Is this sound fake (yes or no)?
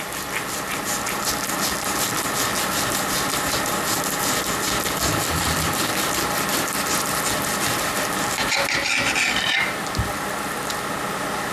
no